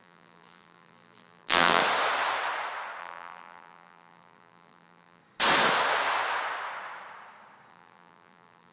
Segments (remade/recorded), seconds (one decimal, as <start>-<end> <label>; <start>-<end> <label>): 0.0-1.8 remade; 1.8-3.0 recorded; 3.0-5.2 remade; 5.2-7.7 recorded; 7.7-8.7 remade